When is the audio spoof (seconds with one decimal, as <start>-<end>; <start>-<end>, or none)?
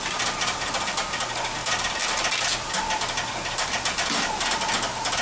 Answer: none